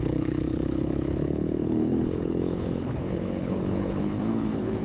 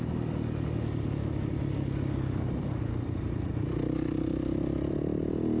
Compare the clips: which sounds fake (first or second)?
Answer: first